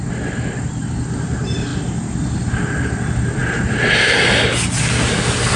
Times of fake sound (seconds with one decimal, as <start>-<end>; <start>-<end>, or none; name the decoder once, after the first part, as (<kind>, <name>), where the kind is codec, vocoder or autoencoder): none